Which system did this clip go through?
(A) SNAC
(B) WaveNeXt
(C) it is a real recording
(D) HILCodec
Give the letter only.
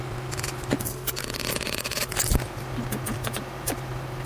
C